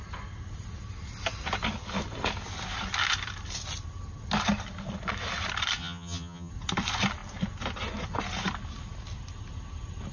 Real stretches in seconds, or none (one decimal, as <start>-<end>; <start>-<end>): 0.0-5.8; 6.5-10.1